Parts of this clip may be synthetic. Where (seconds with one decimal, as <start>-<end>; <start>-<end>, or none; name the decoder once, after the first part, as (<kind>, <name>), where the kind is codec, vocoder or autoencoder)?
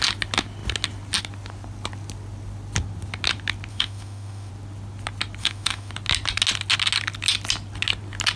3.7-4.5 (autoencoder, DAC-VAE); 5.4-5.9